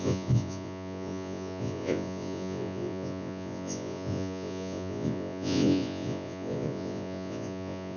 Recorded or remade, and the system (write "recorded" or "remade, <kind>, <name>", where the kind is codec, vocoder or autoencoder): remade, vocoder, Vocos